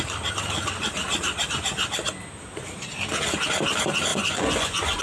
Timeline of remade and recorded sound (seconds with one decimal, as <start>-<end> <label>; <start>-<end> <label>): 0.0-4.1 recorded; 4.1-5.0 remade